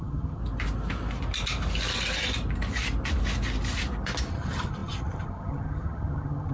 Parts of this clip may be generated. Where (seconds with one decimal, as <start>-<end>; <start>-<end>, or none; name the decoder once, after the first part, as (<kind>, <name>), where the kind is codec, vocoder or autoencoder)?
0.0-0.4 (vocoder, HiFi-GAN); 4.3-6.5